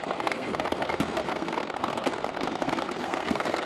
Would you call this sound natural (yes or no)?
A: no